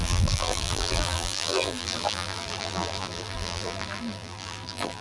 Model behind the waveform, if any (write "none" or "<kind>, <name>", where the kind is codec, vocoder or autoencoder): vocoder, BigVGAN v2